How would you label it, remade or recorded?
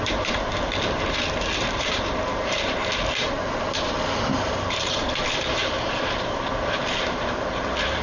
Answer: remade